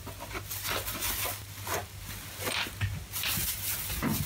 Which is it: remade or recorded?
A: recorded